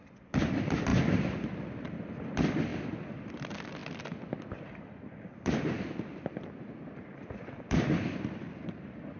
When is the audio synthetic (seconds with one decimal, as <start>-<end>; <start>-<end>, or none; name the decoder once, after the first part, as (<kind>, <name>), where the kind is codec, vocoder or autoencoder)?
0.0-0.9 (vocoder, BigVGAN v2); 1.5-2.7; 3.3-9.2